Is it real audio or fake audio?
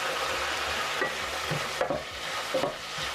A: real